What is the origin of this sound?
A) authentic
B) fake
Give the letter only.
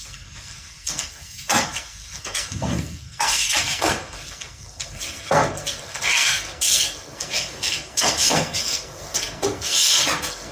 B